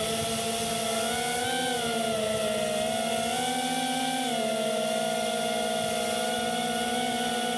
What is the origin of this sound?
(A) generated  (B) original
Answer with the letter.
B